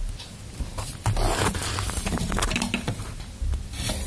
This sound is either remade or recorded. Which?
recorded